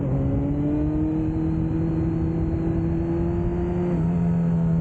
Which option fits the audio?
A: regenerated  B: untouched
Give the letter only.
B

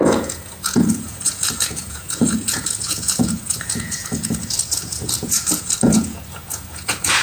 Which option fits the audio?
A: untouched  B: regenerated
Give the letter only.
B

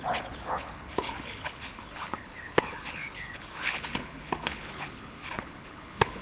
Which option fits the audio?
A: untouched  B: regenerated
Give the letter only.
B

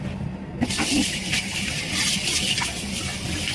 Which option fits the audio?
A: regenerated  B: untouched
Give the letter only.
B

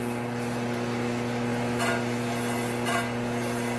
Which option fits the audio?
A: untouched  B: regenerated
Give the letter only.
A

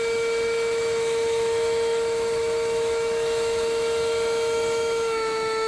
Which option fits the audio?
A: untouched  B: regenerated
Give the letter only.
B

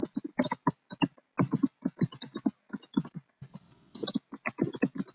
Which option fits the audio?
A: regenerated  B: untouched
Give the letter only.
B